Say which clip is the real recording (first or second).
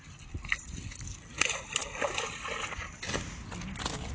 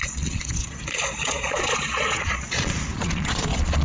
first